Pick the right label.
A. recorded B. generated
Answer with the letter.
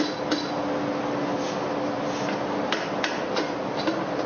A